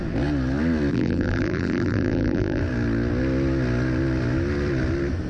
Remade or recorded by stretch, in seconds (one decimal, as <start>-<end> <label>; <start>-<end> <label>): 0.0-0.9 recorded; 0.9-2.6 remade; 2.6-5.3 recorded